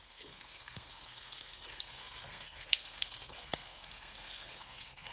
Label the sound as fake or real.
fake